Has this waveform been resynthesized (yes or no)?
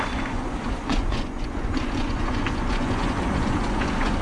yes